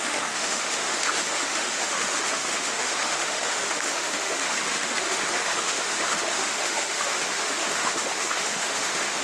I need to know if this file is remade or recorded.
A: remade